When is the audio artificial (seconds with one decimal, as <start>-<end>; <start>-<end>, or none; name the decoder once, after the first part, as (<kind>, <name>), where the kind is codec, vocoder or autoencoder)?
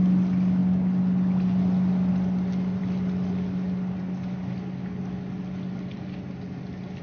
none